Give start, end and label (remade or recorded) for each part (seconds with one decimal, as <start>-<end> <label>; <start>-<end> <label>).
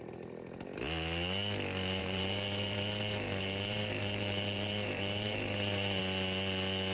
0.0-2.0 recorded; 2.0-6.0 remade; 6.0-6.9 recorded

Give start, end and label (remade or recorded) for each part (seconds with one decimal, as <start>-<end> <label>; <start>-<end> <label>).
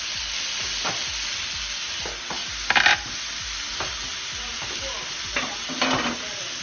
0.0-6.6 recorded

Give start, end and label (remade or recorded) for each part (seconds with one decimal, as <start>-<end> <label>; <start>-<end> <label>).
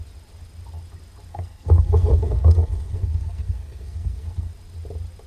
0.0-1.3 recorded; 1.3-4.5 remade; 4.5-5.3 recorded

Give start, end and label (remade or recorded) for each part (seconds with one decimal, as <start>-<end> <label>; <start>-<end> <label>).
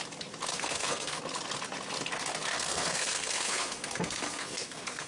0.0-0.5 recorded; 0.5-1.2 remade; 1.2-2.5 recorded; 2.5-5.1 remade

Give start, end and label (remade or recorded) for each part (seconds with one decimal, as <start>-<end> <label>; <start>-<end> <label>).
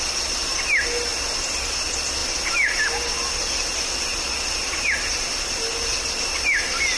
0.0-7.0 recorded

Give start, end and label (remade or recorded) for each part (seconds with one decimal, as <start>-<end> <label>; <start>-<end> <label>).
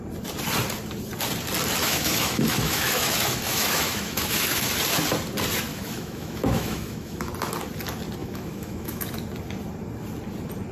0.0-1.8 recorded; 1.8-4.7 remade; 4.7-5.7 recorded; 5.7-7.3 remade; 7.3-8.2 recorded; 8.2-9.0 remade; 9.0-10.7 recorded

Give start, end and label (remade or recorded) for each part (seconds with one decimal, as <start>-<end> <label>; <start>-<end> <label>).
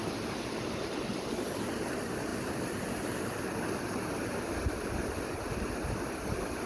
0.0-6.7 recorded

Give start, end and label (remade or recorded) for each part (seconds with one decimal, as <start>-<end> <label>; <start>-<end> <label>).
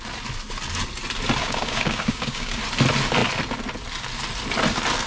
0.0-1.4 recorded; 1.4-2.6 remade; 2.6-5.1 recorded